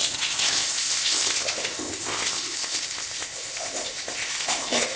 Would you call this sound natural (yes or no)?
no